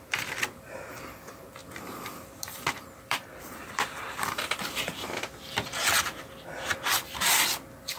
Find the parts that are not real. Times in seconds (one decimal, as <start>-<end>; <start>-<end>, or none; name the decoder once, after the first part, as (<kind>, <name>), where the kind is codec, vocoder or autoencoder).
1.6-4.4 (vocoder, BigVGAN v2)